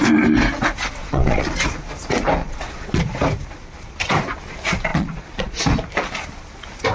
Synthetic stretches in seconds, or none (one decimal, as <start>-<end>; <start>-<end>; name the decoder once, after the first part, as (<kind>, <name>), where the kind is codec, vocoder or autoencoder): 1.0-1.5 (vocoder, Vocos); 2.4-3.0; 4.9-5.6